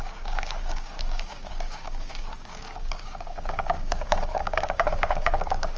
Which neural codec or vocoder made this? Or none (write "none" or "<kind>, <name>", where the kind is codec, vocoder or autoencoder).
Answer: codec, DAC